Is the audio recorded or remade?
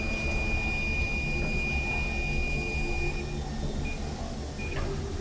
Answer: recorded